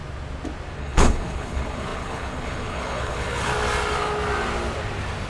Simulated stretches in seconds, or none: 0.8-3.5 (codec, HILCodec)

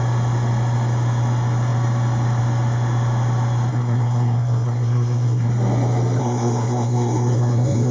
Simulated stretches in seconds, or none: 3.7-5.5 (codec, SNAC); 6.2-7.9